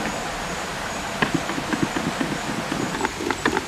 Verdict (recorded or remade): recorded